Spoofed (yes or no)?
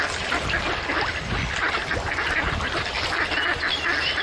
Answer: no